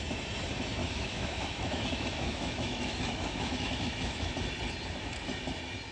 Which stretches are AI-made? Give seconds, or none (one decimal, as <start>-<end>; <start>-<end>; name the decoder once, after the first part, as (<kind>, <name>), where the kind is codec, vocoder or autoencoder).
0.8-4.3 (autoencoder, DAC-VAE)